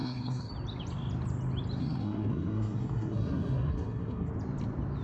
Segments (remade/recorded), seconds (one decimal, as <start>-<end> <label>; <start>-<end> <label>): 0.0-0.5 remade; 0.5-1.8 recorded; 1.8-4.3 remade; 4.3-5.0 recorded